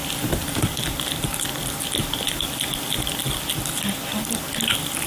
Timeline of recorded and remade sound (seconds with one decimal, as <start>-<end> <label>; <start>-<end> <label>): 0.0-5.1 recorded